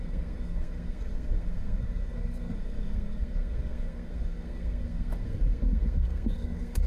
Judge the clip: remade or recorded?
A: remade